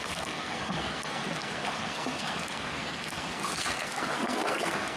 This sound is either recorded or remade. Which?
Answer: remade